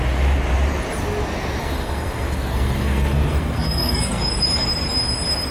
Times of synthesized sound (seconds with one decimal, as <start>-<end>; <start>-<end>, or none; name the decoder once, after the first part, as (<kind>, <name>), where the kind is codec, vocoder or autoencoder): 1.6-4.2 (codec, SNAC)